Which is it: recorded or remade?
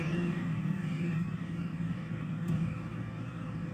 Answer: remade